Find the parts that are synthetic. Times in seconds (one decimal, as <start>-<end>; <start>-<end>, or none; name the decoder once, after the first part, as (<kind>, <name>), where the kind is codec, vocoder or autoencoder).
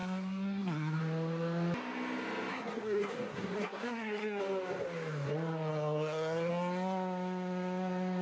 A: 0.0-1.0 (codec, SNAC); 2.5-4.4; 5.7-6.5